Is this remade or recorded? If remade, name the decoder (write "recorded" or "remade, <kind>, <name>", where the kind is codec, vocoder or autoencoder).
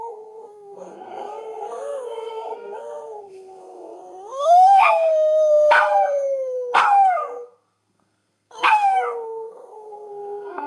remade, codec, SNAC